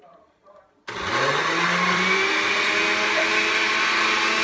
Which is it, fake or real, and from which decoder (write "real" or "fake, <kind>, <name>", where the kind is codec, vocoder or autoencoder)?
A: real